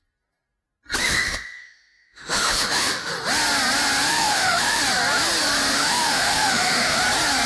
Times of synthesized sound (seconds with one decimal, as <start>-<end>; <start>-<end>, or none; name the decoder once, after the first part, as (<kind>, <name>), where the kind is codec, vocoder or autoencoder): 1.0-3.1 (autoencoder, DAC-VAE); 4.1-4.8; 5.7-7.0